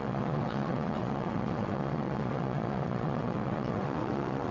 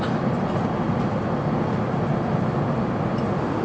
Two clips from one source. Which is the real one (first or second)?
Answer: second